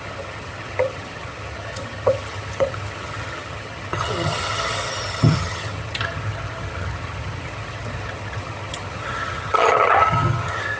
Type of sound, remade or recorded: remade